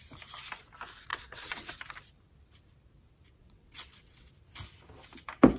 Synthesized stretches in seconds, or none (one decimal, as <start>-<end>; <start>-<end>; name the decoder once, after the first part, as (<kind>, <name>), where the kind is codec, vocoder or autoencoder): 1.1-1.7 (vocoder, WaveNeXt); 3.4-4.3